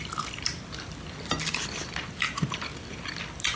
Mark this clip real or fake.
real